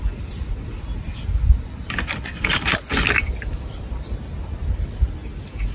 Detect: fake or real real